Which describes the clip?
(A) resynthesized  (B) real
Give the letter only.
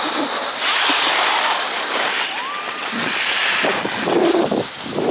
B